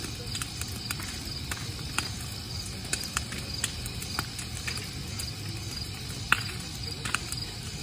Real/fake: real